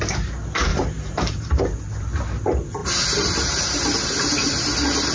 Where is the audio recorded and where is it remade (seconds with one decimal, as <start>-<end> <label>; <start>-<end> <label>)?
0.0-0.7 recorded; 0.7-1.6 remade; 1.6-2.8 recorded; 2.8-3.5 remade; 3.5-5.1 recorded